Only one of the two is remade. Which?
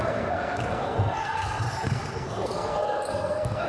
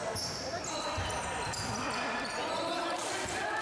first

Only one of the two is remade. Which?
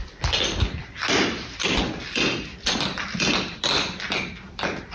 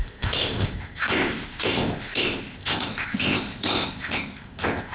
second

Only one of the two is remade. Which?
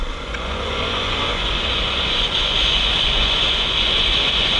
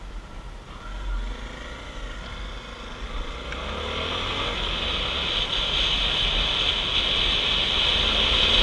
first